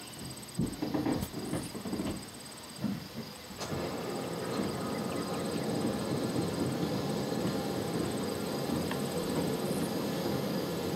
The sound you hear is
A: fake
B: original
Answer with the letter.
B